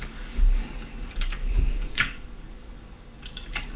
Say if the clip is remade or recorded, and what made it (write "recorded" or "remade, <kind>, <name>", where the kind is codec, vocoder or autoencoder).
remade, codec, DAC